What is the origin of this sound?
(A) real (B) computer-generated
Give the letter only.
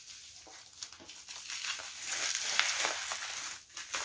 A